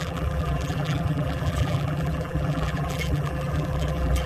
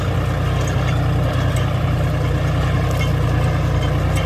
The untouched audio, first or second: second